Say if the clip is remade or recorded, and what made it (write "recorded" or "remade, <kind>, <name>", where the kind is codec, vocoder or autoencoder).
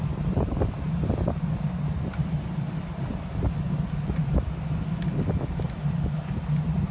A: recorded